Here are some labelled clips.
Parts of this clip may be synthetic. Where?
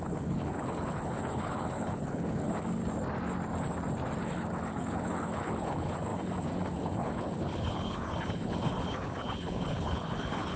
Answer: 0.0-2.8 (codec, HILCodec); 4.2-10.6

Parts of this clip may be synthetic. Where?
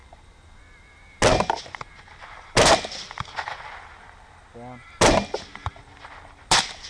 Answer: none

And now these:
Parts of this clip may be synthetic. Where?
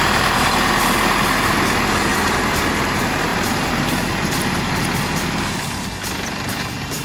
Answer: 2.1-2.6 (vocoder, BigVGAN v2); 3.3-4.8